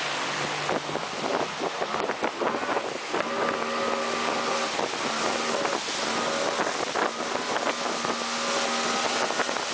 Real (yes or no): yes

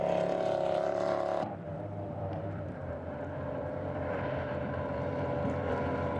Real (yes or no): no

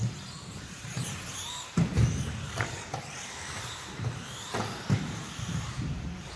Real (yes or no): no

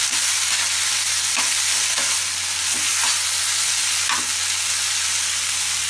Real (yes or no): yes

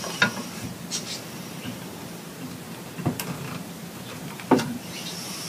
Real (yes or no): yes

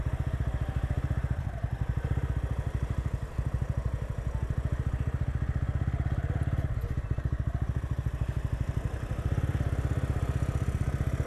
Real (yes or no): yes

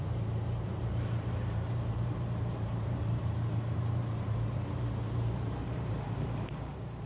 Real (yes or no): no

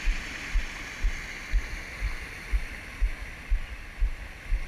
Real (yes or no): yes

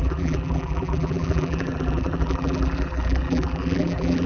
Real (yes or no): no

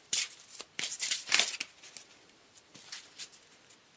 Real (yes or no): no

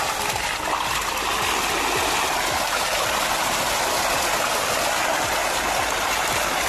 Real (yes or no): yes